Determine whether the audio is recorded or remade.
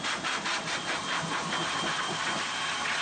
recorded